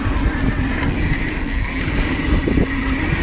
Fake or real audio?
real